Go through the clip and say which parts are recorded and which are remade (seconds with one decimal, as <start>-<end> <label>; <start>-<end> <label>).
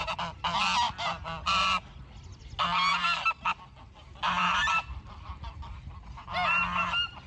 0.0-7.3 recorded